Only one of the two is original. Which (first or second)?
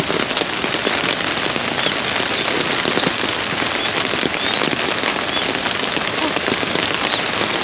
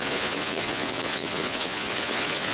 first